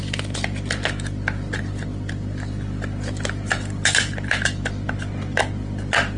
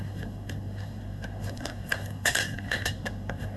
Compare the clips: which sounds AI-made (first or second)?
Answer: second